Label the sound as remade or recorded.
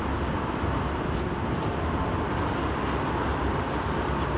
recorded